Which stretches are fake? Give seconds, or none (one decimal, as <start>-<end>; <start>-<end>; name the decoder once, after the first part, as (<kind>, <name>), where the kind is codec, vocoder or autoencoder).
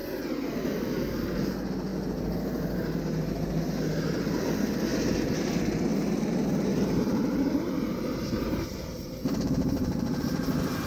5.9-10.2 (vocoder, BigVGAN v2)